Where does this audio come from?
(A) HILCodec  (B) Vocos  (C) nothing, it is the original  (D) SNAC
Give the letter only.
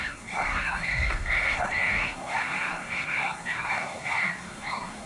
D